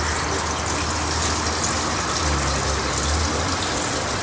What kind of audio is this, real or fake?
real